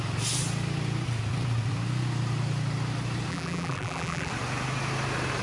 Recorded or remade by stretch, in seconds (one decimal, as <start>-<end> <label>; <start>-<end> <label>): 0.0-3.3 recorded; 3.3-4.3 remade; 4.3-5.4 recorded